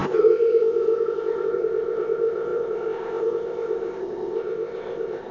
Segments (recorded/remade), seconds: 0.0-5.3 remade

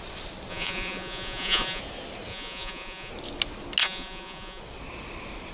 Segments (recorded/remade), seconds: 0.0-0.5 recorded; 0.5-1.8 remade; 1.8-2.3 recorded; 2.3-3.1 remade; 3.1-3.8 recorded; 3.8-4.6 remade; 4.6-5.5 recorded

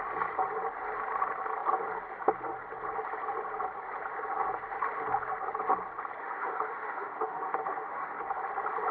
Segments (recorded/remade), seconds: 0.0-6.2 recorded; 6.2-8.2 remade; 8.2-8.9 recorded

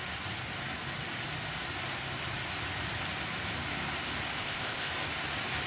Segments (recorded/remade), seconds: 0.0-4.4 recorded; 4.4-4.9 remade; 4.9-5.7 recorded

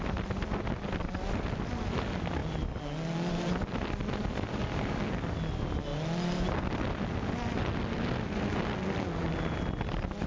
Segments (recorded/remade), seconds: 0.0-10.3 recorded

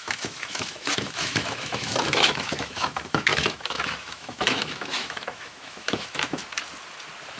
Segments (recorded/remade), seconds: 0.0-6.4 remade; 6.4-7.4 recorded

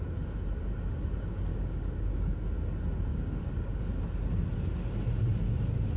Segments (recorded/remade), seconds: 0.0-1.5 recorded; 1.5-2.4 remade; 2.4-3.1 recorded; 3.1-3.8 remade; 3.8-6.0 recorded